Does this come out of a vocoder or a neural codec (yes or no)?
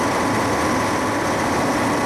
no